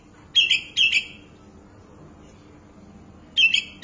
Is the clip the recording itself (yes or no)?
yes